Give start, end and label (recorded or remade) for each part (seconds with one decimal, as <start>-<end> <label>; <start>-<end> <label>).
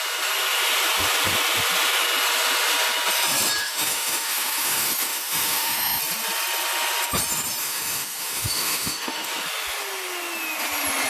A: 0.0-3.6 recorded; 3.6-6.0 remade; 6.0-7.6 recorded; 7.6-9.3 remade; 9.3-11.1 recorded